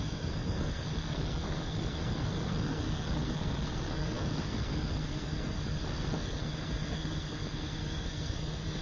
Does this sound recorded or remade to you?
remade